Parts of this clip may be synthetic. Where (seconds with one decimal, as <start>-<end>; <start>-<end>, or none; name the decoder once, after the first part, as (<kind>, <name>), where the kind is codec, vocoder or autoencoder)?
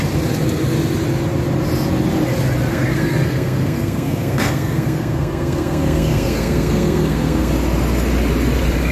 2.7-7.5 (codec, SNAC)